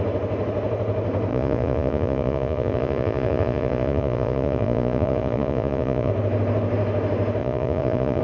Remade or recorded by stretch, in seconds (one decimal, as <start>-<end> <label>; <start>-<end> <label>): 0.0-1.3 recorded; 1.3-6.1 remade; 6.1-7.4 recorded; 7.4-8.2 remade